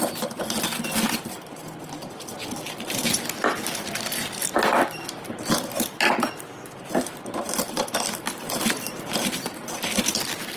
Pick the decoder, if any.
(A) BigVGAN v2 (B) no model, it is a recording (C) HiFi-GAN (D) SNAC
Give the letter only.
B